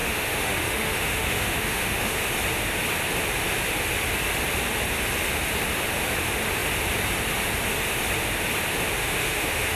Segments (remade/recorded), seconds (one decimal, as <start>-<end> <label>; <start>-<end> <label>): 0.0-2.2 remade; 2.2-9.0 recorded; 9.0-9.8 remade